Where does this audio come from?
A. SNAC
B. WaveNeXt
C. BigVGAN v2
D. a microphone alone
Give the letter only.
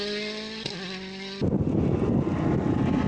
D